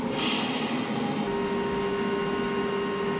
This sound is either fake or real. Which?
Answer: real